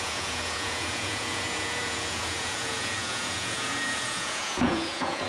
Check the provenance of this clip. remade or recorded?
remade